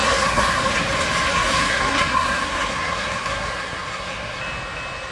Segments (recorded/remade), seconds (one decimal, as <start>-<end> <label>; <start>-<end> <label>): 0.0-0.6 remade; 0.6-1.3 recorded; 1.3-4.4 remade; 4.4-5.1 recorded